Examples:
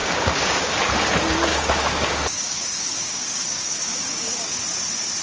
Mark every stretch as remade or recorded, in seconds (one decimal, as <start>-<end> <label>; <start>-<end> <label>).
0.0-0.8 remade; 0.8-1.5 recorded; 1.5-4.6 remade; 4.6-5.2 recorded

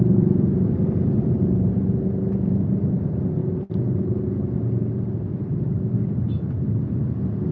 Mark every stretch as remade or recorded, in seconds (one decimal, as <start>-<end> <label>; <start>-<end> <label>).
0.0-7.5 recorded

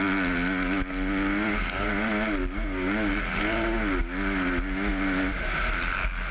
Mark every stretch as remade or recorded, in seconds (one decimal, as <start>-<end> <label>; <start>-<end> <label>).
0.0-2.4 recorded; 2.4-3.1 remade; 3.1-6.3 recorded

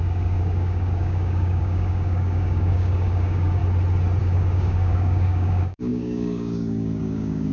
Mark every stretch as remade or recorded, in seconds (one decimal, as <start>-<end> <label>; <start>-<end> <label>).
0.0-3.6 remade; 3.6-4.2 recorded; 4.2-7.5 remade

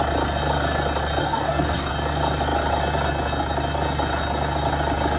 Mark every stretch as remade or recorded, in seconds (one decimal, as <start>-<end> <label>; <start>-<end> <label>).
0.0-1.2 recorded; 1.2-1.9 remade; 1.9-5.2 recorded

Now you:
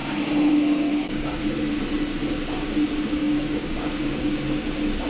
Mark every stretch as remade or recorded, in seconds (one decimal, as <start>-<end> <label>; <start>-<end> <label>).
0.0-0.9 recorded; 0.9-1.4 remade; 1.4-3.2 recorded; 3.2-4.4 remade; 4.4-5.1 recorded